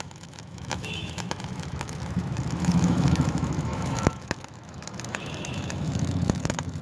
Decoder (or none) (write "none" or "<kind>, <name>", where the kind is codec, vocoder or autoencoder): autoencoder, DAC-VAE